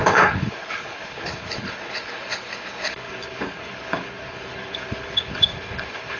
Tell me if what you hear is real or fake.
fake